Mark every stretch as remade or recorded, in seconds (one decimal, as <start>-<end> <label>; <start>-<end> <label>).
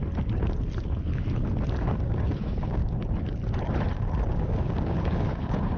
0.0-1.8 recorded; 1.8-2.8 remade; 2.8-4.3 recorded; 4.3-5.8 remade